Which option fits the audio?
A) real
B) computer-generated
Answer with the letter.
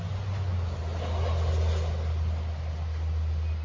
A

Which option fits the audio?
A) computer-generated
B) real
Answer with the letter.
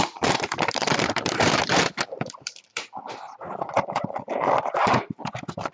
A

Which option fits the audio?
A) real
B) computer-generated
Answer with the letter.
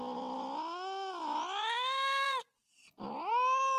A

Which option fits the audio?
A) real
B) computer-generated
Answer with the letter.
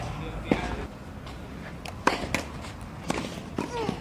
A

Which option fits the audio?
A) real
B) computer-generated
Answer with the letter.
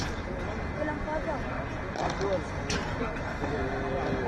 A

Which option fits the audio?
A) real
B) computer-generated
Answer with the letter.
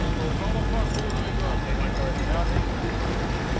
A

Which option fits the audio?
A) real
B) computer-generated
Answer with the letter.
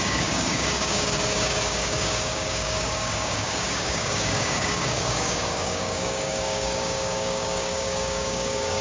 B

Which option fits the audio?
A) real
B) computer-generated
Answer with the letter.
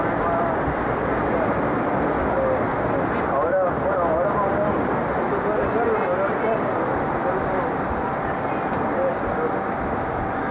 A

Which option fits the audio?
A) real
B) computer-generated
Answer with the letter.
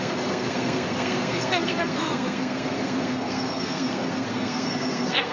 B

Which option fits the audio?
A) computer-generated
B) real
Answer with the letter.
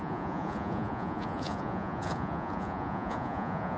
A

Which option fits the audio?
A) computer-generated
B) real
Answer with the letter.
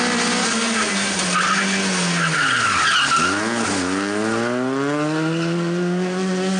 B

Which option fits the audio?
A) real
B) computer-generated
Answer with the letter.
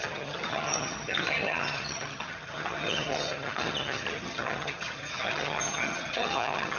B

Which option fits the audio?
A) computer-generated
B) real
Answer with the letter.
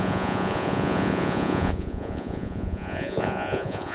A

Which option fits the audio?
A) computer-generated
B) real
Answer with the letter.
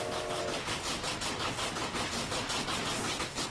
B